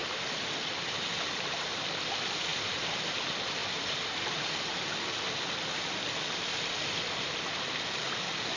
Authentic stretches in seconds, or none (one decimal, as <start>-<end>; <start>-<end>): 1.7-2.5; 3.1-3.6; 4.9-8.6